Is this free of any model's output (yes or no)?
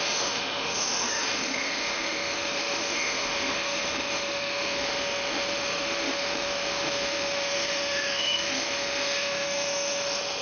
no